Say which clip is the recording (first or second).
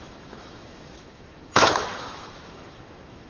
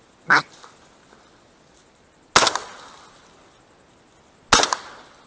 second